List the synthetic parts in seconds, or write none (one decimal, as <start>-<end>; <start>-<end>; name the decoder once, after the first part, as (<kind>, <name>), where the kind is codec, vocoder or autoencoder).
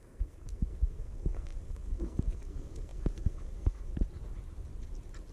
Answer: 0.0-3.9 (codec, SNAC)